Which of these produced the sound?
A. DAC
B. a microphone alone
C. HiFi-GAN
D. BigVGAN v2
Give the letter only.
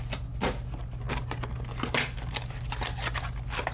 B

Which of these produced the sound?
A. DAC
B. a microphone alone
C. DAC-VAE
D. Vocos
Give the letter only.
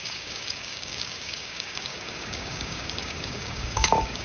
A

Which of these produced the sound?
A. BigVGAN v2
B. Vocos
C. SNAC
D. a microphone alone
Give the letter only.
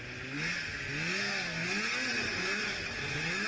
D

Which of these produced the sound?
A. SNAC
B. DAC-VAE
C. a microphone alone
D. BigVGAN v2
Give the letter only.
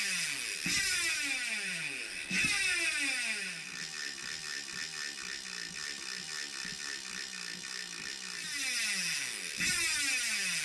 C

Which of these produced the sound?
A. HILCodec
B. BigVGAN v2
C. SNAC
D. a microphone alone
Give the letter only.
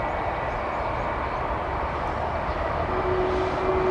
D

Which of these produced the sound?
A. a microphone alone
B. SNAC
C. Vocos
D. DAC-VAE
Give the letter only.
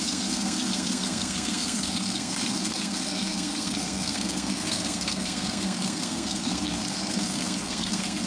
B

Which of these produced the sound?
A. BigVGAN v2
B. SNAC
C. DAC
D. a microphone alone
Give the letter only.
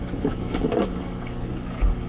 C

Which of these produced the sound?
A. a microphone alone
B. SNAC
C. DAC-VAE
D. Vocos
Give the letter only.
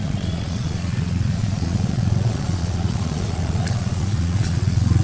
D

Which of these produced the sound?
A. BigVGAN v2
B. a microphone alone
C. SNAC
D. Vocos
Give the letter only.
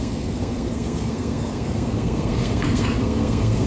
C